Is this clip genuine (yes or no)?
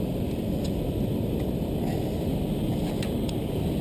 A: yes